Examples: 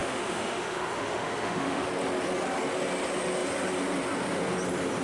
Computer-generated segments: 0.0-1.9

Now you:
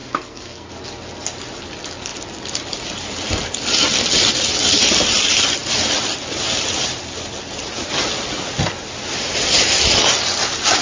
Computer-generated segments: 0.0-0.7

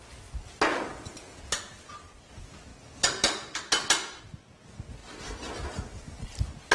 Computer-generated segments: 1.2-1.7

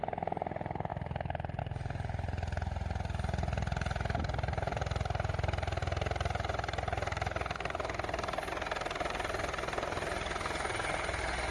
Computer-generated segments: none

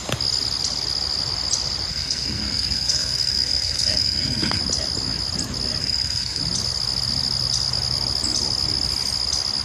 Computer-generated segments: 1.9-4.6; 5.8-6.4

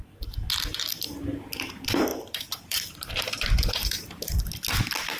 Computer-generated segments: 2.1-3.1; 3.8-4.3

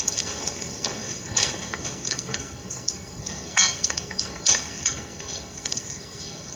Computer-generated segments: 0.0-6.6

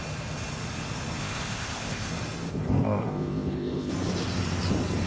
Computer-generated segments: 1.2-2.1; 2.5-3.9